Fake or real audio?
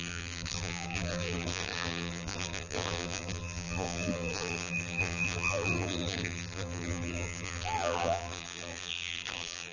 fake